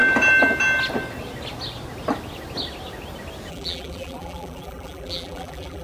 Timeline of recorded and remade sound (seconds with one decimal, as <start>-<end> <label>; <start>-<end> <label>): 0.0-3.5 recorded; 3.5-5.8 remade